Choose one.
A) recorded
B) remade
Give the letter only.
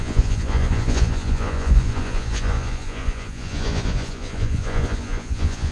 B